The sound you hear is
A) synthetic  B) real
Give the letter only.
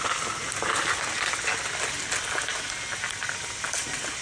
B